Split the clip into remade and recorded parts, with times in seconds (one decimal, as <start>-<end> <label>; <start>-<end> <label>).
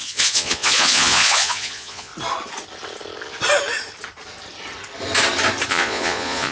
0.0-2.1 remade; 2.1-5.7 recorded; 5.7-6.5 remade